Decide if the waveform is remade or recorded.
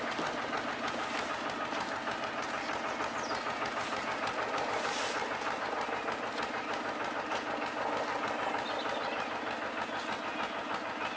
recorded